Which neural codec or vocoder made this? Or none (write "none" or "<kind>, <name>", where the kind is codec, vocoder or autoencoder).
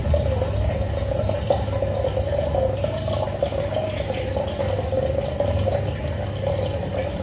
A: none